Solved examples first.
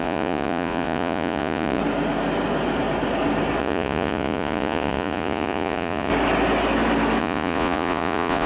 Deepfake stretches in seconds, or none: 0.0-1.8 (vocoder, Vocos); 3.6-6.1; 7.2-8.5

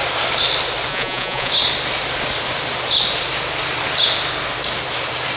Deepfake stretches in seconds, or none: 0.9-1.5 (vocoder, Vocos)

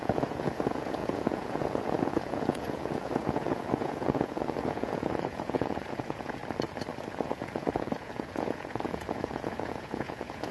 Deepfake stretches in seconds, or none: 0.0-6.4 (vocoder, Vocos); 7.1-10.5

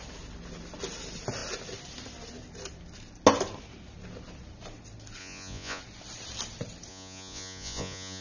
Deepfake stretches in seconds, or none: 5.2-5.8 (vocoder, Vocos); 6.9-8.2

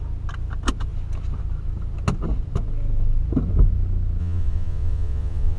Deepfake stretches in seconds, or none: 4.2-5.6 (vocoder, Vocos)

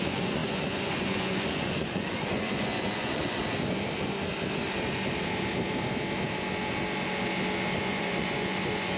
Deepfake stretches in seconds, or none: 0.0-3.4 (vocoder, Vocos); 7.8-9.0